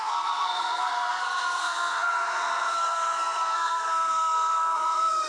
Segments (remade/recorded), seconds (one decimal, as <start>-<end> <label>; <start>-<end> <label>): 0.0-5.3 remade